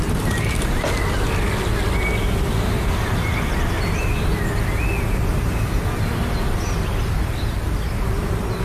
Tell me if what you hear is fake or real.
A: real